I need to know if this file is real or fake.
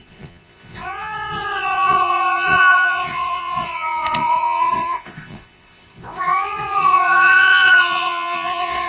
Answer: fake